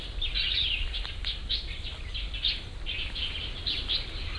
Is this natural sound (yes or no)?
yes